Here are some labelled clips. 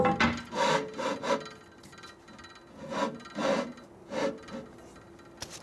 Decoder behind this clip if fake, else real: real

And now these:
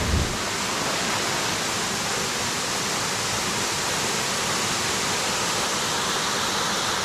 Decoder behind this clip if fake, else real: real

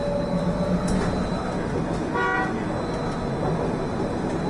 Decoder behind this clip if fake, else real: real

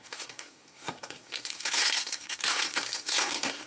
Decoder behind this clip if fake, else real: fake, codec, SNAC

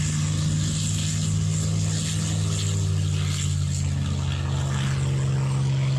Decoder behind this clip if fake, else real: real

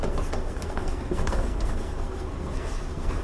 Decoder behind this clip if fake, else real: fake, codec, SNAC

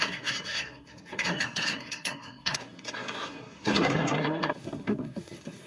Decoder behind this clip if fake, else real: fake, codec, SNAC